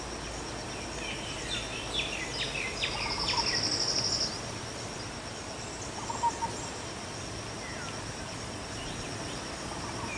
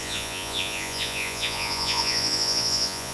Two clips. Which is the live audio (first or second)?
first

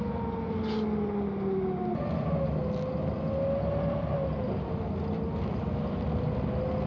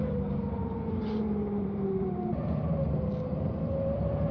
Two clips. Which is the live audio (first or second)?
first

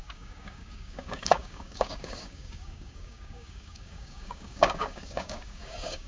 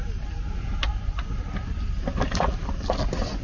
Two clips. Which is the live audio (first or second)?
second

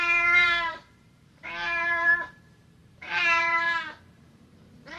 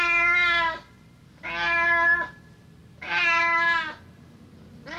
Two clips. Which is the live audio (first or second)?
second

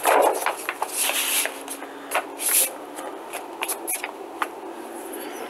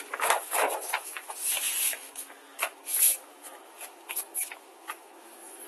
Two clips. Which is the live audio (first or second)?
first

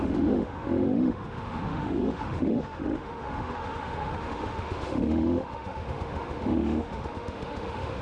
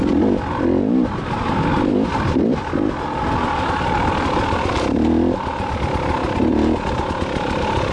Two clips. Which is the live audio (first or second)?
second